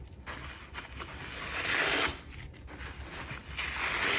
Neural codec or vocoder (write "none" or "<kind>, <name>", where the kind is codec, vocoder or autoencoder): none